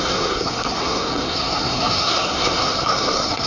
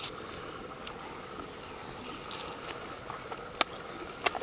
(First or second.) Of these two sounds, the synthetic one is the first